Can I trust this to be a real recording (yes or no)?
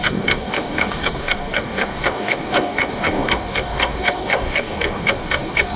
no